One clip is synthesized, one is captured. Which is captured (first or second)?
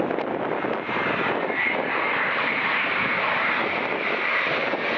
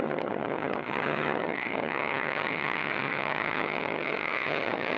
first